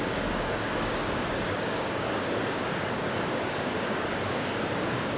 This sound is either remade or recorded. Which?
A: remade